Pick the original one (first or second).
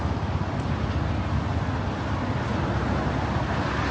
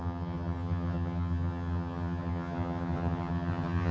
first